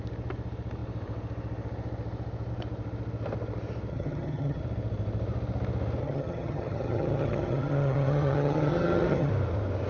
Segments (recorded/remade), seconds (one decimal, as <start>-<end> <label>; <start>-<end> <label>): 0.0-3.9 recorded; 3.9-4.6 remade; 4.6-6.0 recorded; 6.0-9.3 remade; 9.3-9.9 recorded